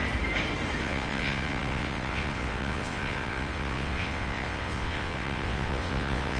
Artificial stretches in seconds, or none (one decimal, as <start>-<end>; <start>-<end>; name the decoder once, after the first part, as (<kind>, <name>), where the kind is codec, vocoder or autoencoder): 0.8-6.4 (vocoder, WaveNeXt)